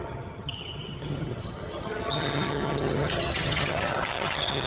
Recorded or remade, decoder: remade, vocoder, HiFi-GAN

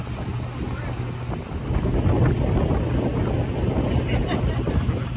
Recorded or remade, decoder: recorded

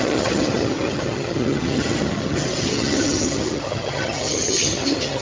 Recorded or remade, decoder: remade, vocoder, HiFi-GAN